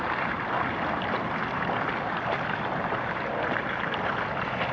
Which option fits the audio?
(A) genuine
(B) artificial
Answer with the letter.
A